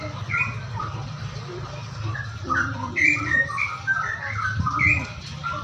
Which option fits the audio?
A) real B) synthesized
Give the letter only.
B